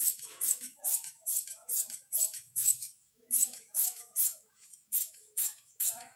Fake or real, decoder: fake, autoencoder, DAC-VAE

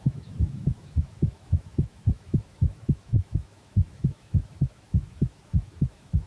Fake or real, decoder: fake, autoencoder, DAC-VAE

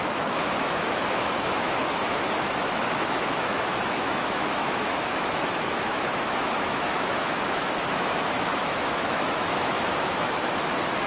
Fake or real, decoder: fake, autoencoder, DAC-VAE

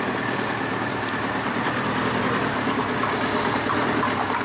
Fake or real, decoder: real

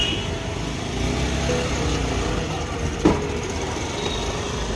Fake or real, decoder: real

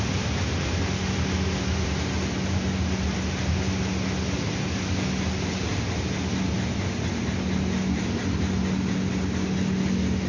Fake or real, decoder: real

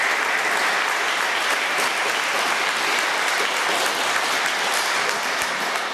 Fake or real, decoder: real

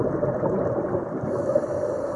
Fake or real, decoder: real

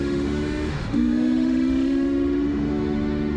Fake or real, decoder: fake, autoencoder, DAC-VAE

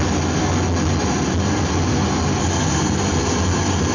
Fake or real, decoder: real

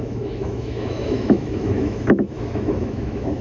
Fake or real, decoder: fake, autoencoder, DAC-VAE